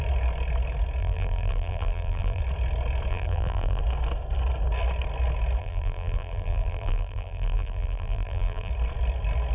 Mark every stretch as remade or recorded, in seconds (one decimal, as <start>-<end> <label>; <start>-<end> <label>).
0.0-1.0 recorded; 1.0-2.4 remade; 2.4-3.1 recorded; 3.1-3.8 remade; 3.8-5.6 recorded; 5.6-8.7 remade; 8.7-9.5 recorded